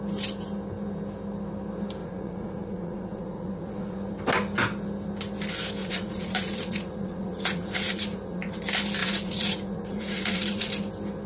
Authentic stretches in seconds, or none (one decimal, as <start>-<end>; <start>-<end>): 0.0-2.0; 4.1-5.8; 8.6-9.0; 10.7-11.3